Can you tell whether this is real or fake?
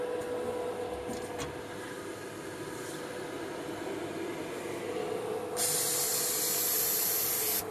real